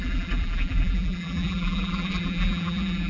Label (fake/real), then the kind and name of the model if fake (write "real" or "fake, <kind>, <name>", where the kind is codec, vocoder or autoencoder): fake, vocoder, BigVGAN v2